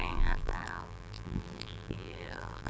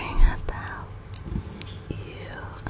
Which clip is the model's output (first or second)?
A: first